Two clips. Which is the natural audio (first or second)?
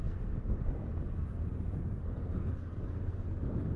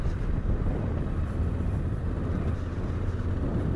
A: second